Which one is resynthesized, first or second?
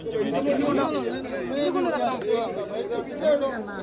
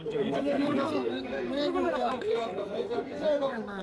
second